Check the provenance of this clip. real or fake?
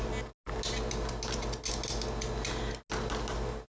real